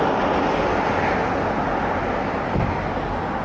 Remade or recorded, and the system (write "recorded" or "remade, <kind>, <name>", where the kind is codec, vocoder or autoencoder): recorded